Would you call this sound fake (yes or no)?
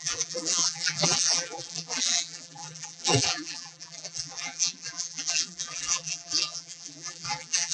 yes